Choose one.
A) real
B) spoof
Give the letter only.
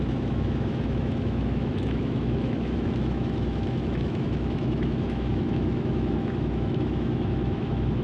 B